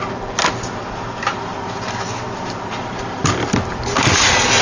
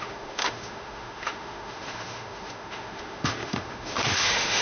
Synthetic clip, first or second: second